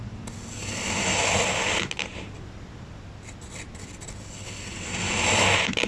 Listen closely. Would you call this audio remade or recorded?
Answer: recorded